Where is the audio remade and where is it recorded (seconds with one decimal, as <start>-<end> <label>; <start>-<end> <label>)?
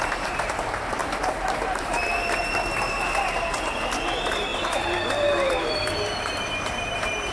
0.0-7.3 remade